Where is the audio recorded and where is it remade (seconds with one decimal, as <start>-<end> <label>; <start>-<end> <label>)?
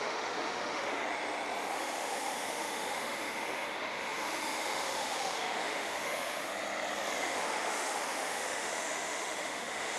0.0-1.0 remade; 1.0-1.7 recorded; 1.7-6.5 remade; 6.5-7.2 recorded; 7.2-10.0 remade